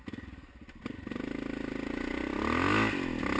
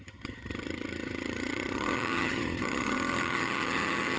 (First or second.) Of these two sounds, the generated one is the second